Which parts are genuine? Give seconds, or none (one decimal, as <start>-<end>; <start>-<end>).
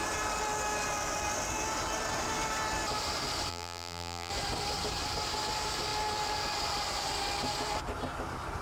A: 0.0-3.5; 4.3-8.6